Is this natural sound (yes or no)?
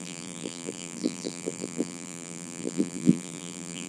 no